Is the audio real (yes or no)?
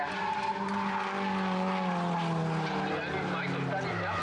yes